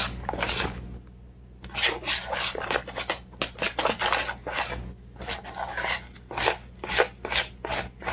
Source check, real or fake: real